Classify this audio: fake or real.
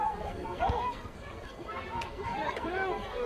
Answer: fake